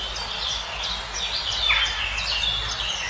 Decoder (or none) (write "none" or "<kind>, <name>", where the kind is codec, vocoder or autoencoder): none